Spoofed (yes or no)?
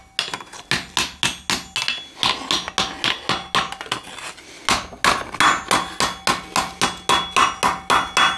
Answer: no